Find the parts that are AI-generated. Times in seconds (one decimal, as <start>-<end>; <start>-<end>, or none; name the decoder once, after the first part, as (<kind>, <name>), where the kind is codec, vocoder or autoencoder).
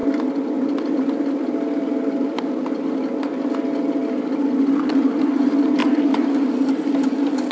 0.0-2.4 (vocoder, BigVGAN v2); 5.8-7.5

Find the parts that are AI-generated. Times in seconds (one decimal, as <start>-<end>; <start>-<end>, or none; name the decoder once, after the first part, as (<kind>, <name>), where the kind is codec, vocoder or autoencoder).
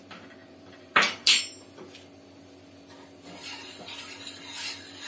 0.4-1.4 (vocoder, BigVGAN v2)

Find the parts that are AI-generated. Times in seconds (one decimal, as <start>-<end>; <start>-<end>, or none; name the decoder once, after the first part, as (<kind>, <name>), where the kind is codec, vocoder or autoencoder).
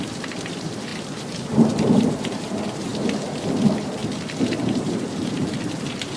0.0-4.0 (vocoder, BigVGAN v2); 4.6-6.2